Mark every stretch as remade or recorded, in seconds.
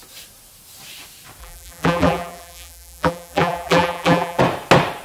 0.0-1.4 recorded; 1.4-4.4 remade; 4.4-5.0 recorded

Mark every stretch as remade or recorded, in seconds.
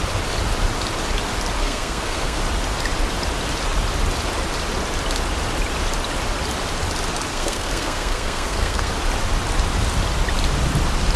0.0-1.6 recorded; 1.6-2.4 remade; 2.4-7.3 recorded; 7.3-8.9 remade; 8.9-11.2 recorded